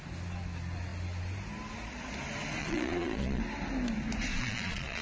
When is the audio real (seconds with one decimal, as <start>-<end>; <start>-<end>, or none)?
0.0-2.6; 3.4-4.3